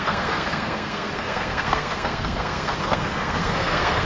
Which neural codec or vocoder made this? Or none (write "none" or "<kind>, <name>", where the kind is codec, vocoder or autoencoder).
codec, SNAC